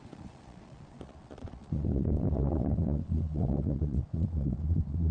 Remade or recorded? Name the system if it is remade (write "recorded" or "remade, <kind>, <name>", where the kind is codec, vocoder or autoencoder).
remade, vocoder, Vocos